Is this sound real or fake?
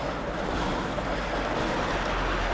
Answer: real